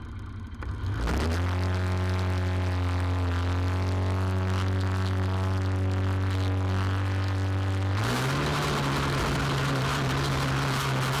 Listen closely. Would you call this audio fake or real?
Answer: real